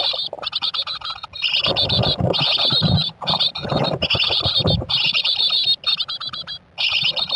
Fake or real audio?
real